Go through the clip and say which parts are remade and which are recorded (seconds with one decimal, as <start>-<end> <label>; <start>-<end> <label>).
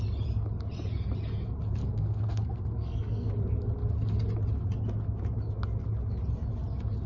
0.0-1.8 recorded; 1.8-3.3 remade; 3.3-7.1 recorded